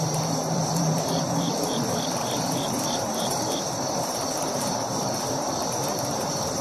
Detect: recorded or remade remade